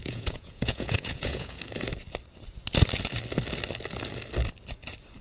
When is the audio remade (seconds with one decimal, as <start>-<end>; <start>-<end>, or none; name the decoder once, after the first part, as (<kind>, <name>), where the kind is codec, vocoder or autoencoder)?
0.0-1.6 (vocoder, Vocos)